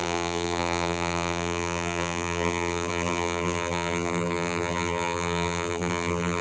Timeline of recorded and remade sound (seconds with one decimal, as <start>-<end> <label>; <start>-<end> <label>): 0.0-6.4 remade